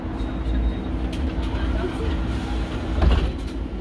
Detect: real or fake real